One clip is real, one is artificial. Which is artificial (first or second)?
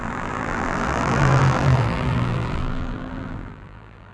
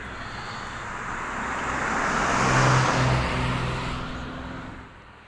first